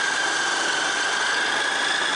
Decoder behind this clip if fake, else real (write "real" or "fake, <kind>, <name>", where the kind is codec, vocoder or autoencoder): real